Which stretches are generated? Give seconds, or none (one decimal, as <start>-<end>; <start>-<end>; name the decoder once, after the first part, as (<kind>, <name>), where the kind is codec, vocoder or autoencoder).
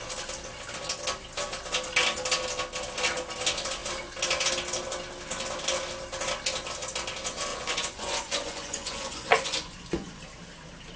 7.5-10.2 (vocoder, Vocos)